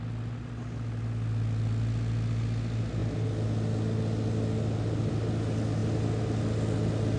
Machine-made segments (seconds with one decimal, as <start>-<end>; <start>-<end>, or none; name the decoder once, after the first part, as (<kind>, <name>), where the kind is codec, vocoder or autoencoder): none